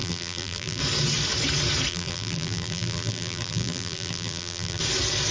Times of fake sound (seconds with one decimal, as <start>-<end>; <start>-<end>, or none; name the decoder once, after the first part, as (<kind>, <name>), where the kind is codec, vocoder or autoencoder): 0.0-0.8 (vocoder, BigVGAN v2); 1.9-4.8